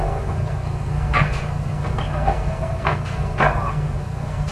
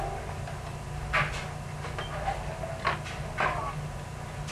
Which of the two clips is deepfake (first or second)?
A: first